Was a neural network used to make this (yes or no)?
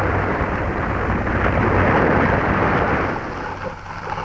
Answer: no